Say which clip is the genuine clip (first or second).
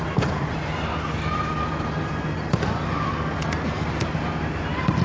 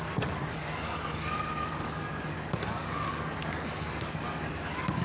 first